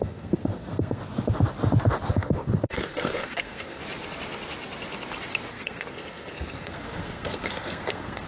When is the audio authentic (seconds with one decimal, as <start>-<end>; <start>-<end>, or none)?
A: 1.0-2.1; 3.8-5.5